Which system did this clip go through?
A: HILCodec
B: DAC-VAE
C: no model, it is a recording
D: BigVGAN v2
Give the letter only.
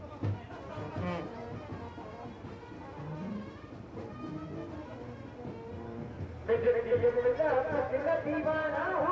C